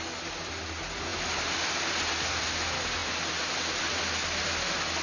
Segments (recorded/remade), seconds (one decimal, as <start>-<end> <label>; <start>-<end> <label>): 0.0-5.0 recorded